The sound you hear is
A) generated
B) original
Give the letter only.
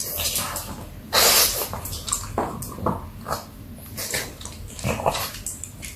B